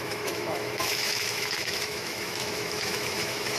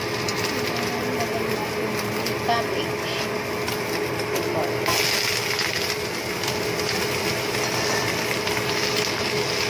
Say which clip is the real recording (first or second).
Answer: second